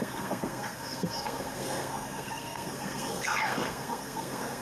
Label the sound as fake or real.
fake